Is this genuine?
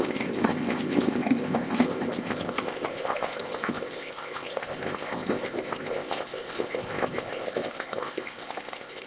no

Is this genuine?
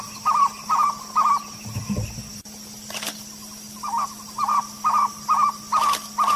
yes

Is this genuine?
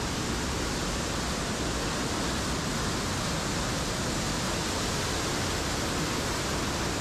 yes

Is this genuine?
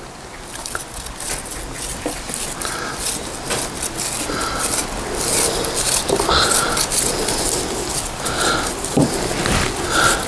yes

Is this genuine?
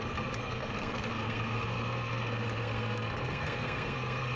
no